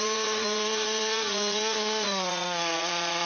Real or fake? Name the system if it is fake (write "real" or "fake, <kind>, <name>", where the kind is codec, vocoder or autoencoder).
fake, vocoder, Vocos